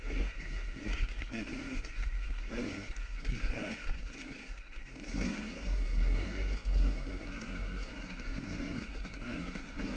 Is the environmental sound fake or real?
fake